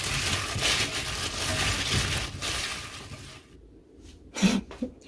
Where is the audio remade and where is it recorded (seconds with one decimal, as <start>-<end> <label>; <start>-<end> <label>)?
0.0-5.1 recorded